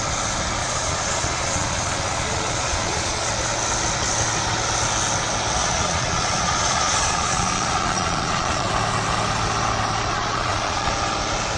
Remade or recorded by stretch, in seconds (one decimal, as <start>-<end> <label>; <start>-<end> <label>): 0.0-0.6 recorded; 0.6-3.3 remade; 3.3-5.6 recorded; 5.6-8.7 remade; 8.7-10.1 recorded; 10.1-10.9 remade; 10.9-11.6 recorded